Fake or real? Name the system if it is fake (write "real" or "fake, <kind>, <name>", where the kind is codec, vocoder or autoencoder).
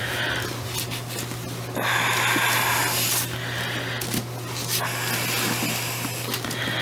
real